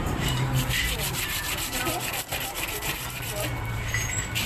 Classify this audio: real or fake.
fake